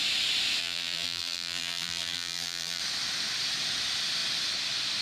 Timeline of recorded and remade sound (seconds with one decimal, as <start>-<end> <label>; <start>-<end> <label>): 0.0-0.6 recorded; 0.6-2.8 remade; 2.8-5.0 recorded